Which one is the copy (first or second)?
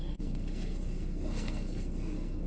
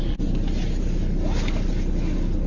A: first